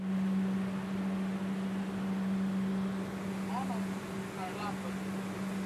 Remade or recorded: recorded